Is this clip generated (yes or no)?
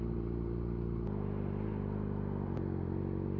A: no